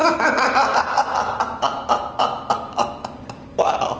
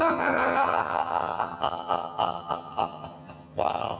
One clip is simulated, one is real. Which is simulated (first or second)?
second